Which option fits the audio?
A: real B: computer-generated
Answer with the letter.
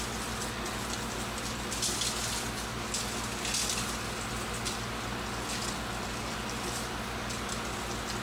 A